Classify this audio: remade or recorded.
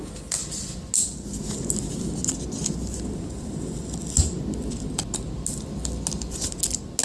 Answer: recorded